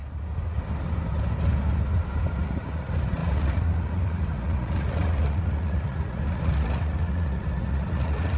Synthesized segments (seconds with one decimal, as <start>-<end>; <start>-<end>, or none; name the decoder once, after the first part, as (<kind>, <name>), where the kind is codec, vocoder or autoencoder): 2.4-8.4 (vocoder, Vocos)